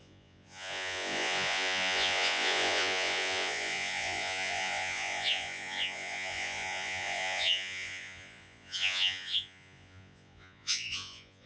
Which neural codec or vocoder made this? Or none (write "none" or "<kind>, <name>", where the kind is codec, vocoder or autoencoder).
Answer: vocoder, Vocos